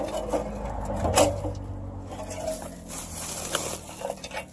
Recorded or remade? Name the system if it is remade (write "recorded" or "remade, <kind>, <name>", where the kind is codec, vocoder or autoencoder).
recorded